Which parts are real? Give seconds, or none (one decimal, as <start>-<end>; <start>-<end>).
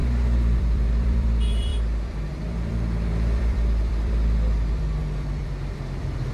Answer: 0.0-0.6